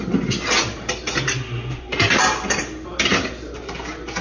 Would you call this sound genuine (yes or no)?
yes